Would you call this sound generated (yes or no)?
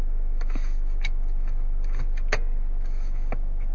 no